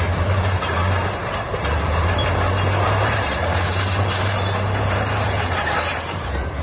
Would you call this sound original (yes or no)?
no